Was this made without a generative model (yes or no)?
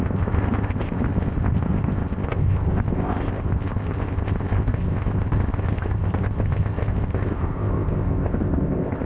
no